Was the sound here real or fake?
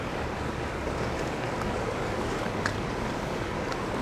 fake